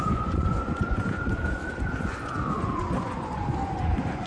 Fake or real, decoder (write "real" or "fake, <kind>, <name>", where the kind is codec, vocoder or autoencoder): fake, vocoder, Vocos